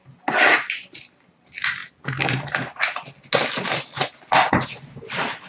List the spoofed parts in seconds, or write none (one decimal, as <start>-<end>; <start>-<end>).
none